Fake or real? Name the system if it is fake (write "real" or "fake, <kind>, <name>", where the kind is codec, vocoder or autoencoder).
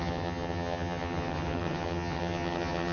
fake, vocoder, HiFi-GAN